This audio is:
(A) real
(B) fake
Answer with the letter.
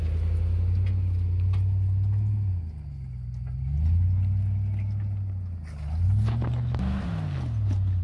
A